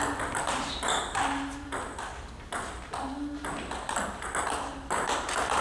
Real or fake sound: real